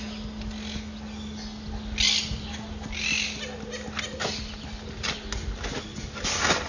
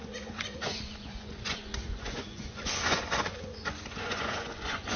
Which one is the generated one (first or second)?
second